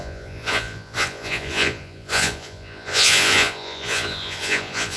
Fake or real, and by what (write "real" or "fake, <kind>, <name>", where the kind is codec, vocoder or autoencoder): fake, vocoder, Vocos